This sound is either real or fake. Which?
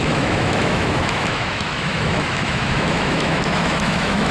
fake